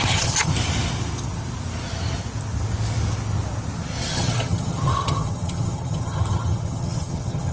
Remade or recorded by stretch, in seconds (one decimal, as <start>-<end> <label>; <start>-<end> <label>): 0.0-0.5 remade; 0.5-4.1 recorded; 4.1-7.5 remade

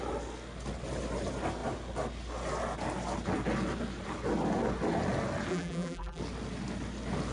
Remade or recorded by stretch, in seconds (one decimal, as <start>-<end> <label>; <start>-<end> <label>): 0.0-5.5 recorded; 5.5-6.2 remade; 6.2-7.3 recorded

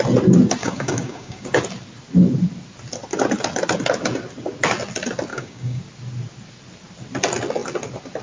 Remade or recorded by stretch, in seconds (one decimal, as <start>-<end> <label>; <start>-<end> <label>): 0.0-0.6 recorded; 0.6-1.6 remade; 1.6-5.3 recorded; 5.3-5.8 remade; 5.8-8.2 recorded

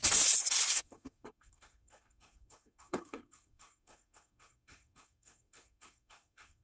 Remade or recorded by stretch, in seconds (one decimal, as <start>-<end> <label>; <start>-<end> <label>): 0.0-0.7 recorded; 0.7-6.6 remade

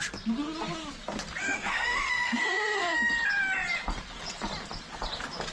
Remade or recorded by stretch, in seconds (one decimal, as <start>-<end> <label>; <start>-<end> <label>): 0.0-1.4 recorded; 1.4-3.1 remade; 3.1-5.5 recorded

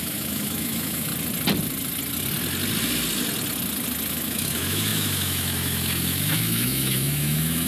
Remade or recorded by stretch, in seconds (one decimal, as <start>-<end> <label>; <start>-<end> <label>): 0.0-1.1 remade; 1.1-4.1 recorded; 4.1-7.7 remade

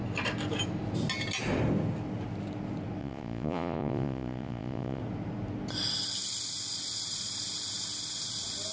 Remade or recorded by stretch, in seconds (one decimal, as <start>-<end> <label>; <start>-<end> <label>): 0.0-3.0 recorded; 3.0-5.0 remade; 5.0-8.7 recorded

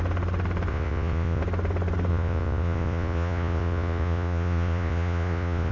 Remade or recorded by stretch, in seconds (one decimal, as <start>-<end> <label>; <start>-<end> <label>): 0.0-0.7 recorded; 0.7-1.4 remade; 1.4-2.1 recorded; 2.1-5.7 remade